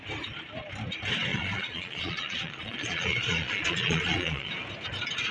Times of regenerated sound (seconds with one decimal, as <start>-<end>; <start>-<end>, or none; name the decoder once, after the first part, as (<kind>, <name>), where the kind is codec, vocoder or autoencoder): 1.3-4.5 (vocoder, Vocos)